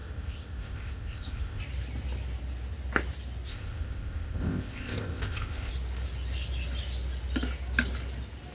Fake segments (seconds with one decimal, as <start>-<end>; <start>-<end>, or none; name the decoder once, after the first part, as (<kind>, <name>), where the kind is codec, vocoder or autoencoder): 0.0-1.6 (codec, ZipCodec); 3.5-5.7